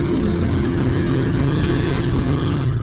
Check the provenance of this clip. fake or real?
fake